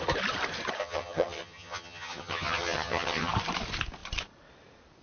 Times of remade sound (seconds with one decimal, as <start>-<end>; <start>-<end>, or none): 0.8-3.3